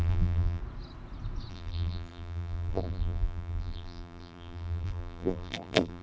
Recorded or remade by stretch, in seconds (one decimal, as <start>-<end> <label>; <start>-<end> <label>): 0.0-0.6 remade; 0.6-1.5 recorded; 1.5-6.0 remade

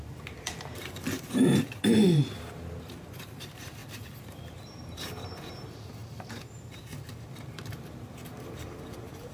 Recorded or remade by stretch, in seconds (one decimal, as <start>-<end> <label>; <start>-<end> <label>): 0.0-3.8 remade; 3.8-4.4 recorded; 4.4-9.3 remade

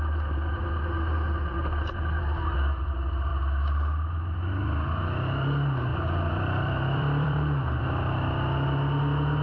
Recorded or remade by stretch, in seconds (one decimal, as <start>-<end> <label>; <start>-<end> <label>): 0.0-5.9 recorded; 5.9-7.9 remade; 7.9-9.4 recorded